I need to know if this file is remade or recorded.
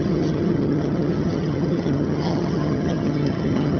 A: remade